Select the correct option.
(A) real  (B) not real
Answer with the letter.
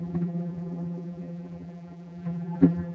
B